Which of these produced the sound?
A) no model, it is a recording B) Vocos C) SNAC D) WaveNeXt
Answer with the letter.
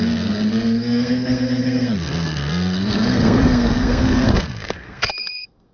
C